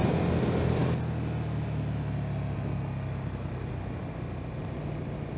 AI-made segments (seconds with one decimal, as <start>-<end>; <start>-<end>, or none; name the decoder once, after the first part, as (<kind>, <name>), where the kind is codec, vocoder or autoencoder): none